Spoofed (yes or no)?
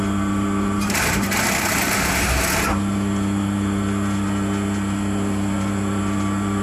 no